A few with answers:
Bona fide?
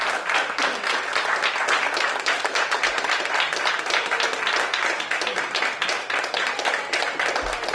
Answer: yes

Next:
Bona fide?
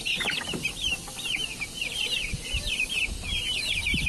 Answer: no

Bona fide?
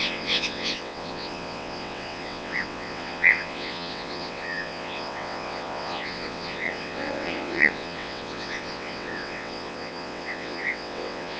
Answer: no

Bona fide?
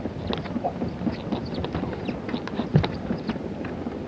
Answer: yes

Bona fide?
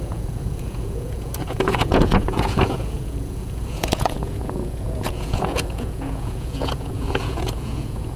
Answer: no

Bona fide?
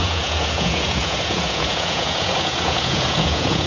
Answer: no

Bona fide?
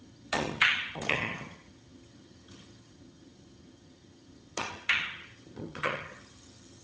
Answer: no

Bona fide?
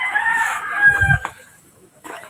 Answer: no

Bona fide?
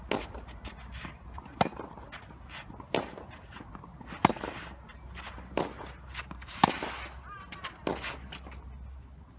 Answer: yes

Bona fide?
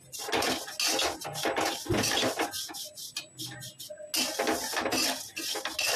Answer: yes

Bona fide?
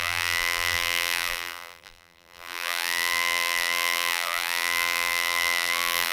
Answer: no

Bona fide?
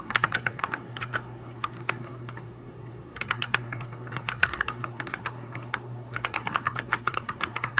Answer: no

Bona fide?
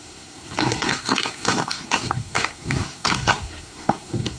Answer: no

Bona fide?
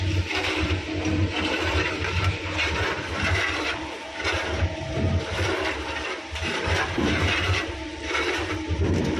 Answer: no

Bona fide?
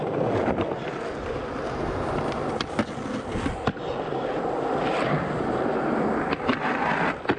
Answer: yes